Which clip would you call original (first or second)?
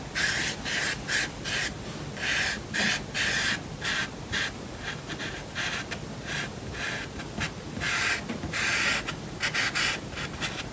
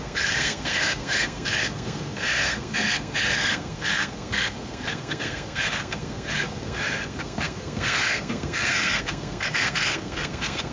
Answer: first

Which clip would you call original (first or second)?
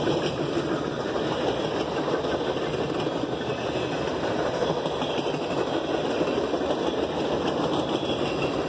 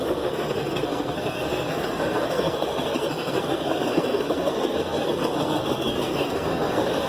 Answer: first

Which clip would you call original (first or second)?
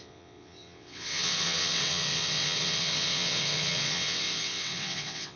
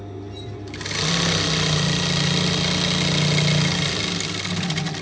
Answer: second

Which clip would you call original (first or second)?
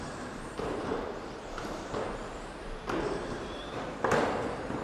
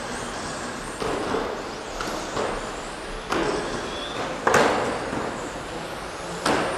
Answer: second